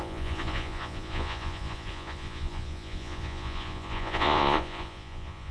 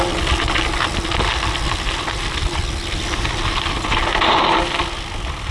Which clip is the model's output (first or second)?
first